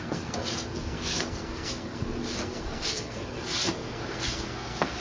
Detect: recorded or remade remade